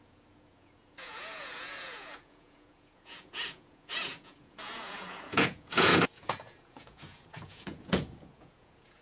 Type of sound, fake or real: fake